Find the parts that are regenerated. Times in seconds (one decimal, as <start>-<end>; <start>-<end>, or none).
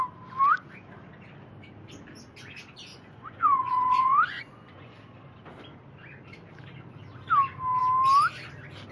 2.9-5.4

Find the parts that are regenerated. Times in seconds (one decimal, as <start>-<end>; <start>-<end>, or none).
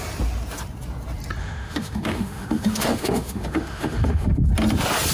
1.4-4.5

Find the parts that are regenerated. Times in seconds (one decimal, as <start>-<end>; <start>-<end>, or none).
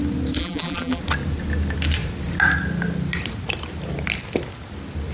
0.4-1.0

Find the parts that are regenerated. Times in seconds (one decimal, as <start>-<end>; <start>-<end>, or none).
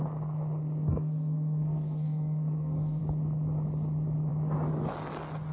0.9-3.0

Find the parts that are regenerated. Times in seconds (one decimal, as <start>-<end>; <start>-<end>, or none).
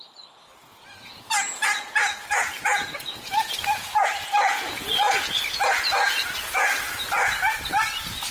0.7-5.4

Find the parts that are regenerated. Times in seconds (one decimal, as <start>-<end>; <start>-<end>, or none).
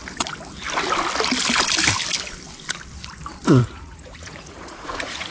3.6-5.3